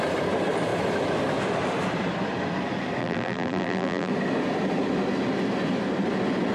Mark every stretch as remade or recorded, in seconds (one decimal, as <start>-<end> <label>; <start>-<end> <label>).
0.0-3.0 recorded; 3.0-4.1 remade; 4.1-6.5 recorded